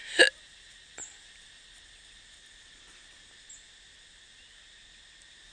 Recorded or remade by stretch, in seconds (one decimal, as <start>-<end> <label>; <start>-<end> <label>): 0.0-5.5 recorded